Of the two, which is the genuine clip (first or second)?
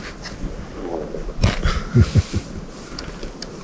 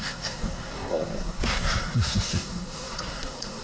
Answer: first